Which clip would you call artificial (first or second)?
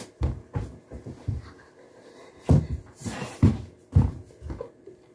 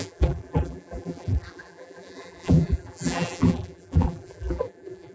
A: second